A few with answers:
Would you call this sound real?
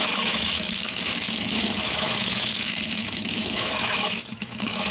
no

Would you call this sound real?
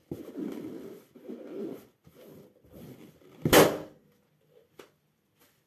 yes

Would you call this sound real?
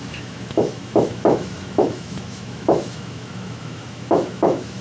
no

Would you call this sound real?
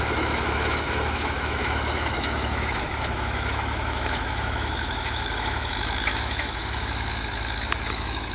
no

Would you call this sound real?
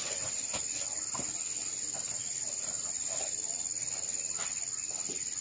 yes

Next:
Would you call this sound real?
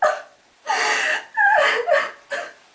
yes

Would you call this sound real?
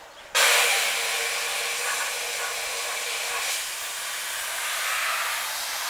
yes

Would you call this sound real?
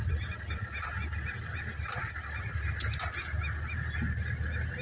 yes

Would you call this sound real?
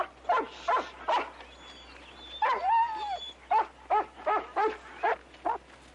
yes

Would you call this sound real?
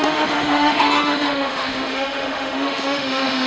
no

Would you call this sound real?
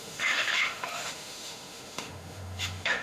no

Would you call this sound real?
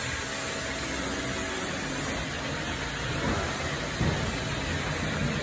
yes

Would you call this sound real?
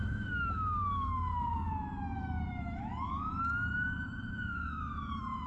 no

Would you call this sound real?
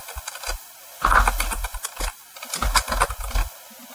yes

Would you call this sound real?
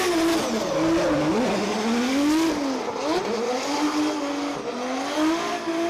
yes